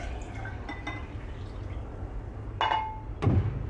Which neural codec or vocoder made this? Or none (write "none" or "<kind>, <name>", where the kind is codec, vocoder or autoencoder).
none